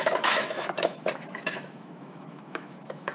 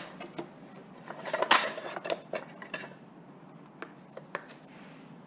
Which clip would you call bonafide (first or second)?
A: second